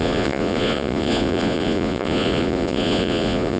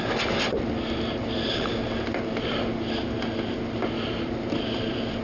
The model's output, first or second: first